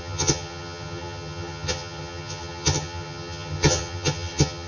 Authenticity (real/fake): fake